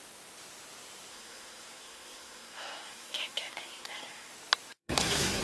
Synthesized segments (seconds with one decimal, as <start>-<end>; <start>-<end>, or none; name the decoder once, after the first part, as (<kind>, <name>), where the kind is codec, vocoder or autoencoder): 1.1-4.3 (codec, SNAC); 4.7-5.4

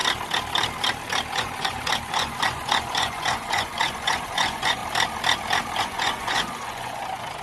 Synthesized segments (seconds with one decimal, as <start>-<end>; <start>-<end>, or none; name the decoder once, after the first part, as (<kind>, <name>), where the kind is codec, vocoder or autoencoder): 1.3-4.8 (vocoder, Vocos); 5.8-7.4

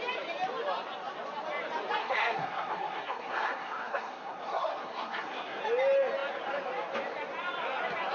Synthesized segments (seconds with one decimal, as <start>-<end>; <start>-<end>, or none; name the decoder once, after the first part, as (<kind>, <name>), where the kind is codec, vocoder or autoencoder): 2.0-5.6 (codec, SNAC)

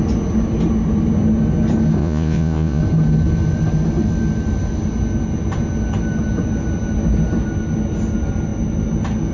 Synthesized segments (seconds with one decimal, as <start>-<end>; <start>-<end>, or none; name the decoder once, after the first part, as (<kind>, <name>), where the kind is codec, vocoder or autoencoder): 2.0-2.8 (vocoder, Vocos)

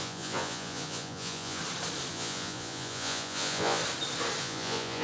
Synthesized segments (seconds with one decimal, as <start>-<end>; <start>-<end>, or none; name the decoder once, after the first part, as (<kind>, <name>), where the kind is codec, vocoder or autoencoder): 0.0-1.6 (vocoder, Vocos); 2.1-3.8; 4.4-5.0